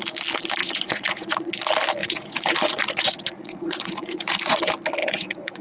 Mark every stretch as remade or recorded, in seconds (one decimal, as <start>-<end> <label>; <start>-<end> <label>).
0.0-0.6 recorded; 0.6-1.5 remade; 1.5-2.0 recorded; 2.0-4.6 remade; 4.6-5.0 recorded; 5.0-5.6 remade